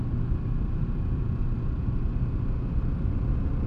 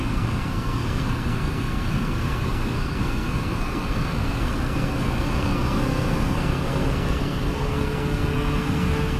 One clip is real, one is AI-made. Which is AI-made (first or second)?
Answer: second